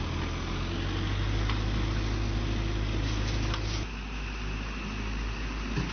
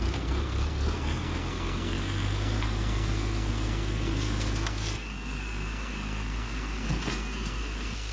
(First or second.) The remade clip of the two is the second